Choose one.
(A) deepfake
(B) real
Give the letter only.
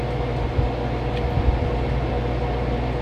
B